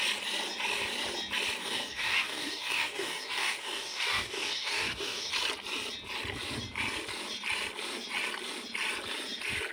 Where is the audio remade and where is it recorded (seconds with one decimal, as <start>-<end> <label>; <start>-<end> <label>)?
0.0-1.6 recorded; 1.6-5.3 remade; 5.3-9.7 recorded